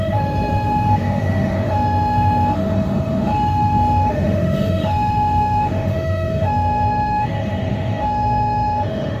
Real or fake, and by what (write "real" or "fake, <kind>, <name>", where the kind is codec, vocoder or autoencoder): fake, autoencoder, DAC-VAE